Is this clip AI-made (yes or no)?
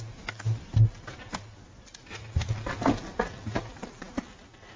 no